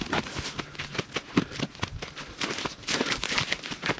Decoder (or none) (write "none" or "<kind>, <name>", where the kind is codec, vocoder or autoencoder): none